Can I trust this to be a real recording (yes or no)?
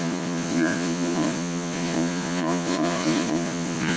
no